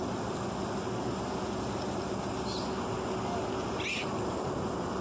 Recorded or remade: recorded